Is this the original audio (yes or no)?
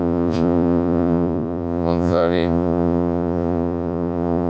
no